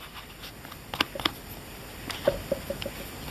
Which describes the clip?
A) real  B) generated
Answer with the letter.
B